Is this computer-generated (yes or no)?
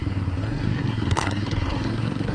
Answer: yes